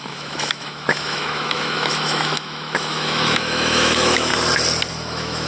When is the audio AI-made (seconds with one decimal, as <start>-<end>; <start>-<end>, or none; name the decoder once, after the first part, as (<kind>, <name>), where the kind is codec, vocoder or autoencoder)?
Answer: 0.0-4.3 (autoencoder, DAC-VAE); 4.9-5.5